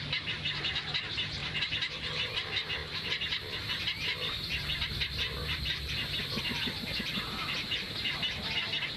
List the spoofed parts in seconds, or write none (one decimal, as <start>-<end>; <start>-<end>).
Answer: 0.0-9.0